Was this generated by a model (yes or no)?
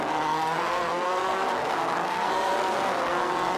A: yes